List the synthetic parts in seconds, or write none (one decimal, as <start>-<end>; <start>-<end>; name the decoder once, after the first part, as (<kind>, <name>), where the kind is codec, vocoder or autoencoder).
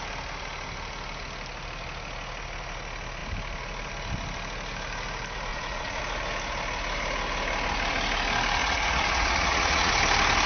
5.5-6.0 (vocoder, Vocos); 8.6-9.9